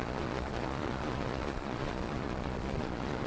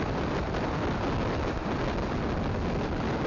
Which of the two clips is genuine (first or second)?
second